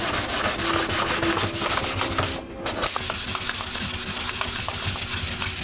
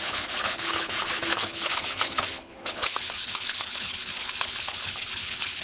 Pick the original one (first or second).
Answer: first